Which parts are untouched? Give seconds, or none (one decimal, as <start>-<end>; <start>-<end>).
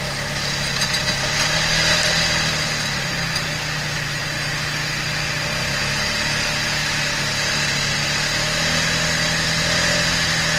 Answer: 0.0-10.6